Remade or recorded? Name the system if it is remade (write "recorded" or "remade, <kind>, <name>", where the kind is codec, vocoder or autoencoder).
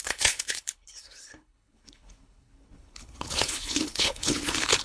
remade, codec, HILCodec